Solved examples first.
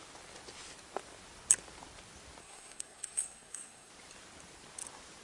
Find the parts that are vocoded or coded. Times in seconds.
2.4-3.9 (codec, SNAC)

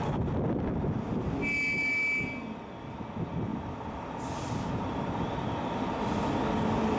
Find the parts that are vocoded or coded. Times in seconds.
none